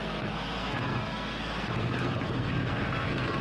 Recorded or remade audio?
remade